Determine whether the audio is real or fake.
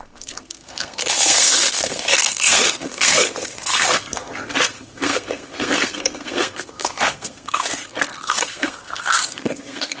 fake